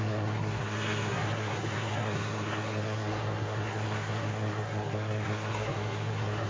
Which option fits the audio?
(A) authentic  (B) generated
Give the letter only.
B